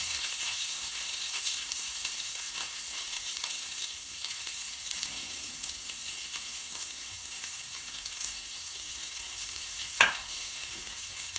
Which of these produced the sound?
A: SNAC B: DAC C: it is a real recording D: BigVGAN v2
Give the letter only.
A